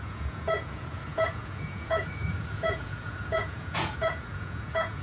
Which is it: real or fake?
fake